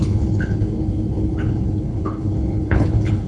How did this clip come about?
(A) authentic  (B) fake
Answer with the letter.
B